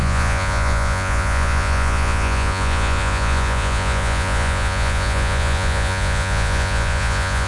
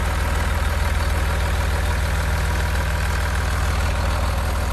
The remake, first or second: first